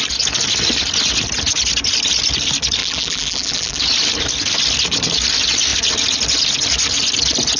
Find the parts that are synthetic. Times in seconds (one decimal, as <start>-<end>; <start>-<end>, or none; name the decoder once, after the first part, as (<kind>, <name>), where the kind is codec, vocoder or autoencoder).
2.8-3.8 (vocoder, BigVGAN v2)

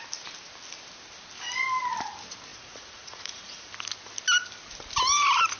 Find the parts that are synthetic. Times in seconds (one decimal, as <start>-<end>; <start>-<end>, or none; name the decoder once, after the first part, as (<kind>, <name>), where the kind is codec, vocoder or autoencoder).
2.5-3.7 (vocoder, Vocos)

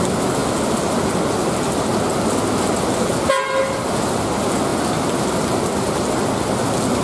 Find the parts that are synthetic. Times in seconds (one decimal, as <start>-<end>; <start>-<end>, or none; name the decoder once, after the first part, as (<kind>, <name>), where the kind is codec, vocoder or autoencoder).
none

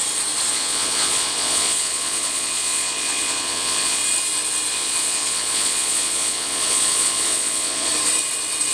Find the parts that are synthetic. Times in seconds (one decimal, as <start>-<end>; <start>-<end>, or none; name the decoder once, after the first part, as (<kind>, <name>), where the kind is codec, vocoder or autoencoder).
0.5-4.0 (vocoder, Vocos); 4.7-7.9